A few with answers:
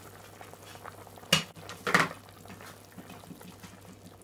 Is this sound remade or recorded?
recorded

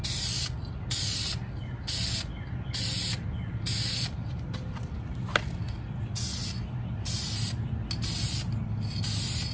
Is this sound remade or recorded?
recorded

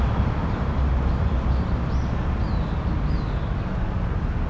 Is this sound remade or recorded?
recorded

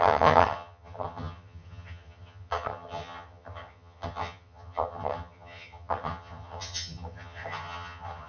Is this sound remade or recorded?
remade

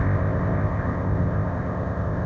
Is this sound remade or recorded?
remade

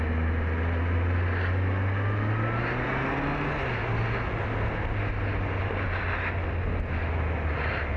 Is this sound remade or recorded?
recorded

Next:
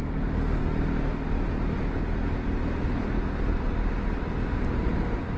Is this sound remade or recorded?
recorded